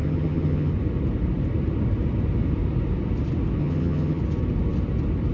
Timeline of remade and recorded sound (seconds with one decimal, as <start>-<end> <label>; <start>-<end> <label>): 0.0-0.7 remade; 0.7-3.6 recorded; 3.6-4.2 remade; 4.2-5.3 recorded